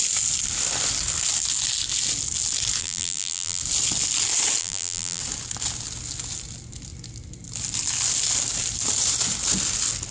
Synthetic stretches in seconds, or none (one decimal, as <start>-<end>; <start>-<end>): 2.8-3.6; 4.6-5.2